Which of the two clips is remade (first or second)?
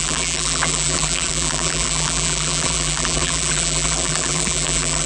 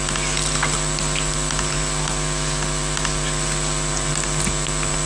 first